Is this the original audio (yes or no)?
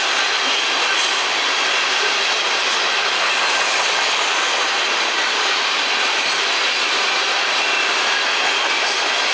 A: yes